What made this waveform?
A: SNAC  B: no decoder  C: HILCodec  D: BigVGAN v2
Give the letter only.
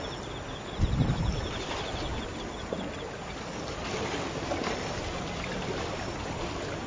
B